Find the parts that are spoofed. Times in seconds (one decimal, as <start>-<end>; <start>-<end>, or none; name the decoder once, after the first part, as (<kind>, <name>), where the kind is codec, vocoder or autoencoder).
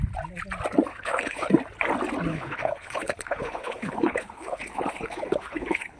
0.9-1.5 (codec, HILCodec); 2.3-6.0